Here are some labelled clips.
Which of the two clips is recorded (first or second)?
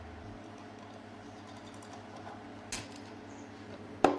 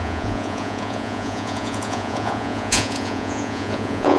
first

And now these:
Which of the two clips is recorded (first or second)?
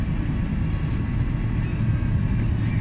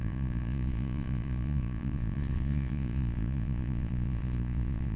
first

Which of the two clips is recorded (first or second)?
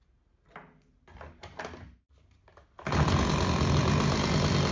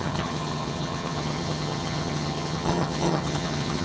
first